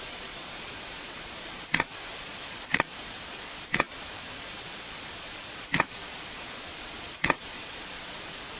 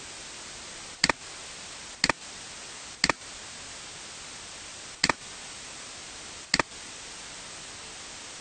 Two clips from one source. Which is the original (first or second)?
second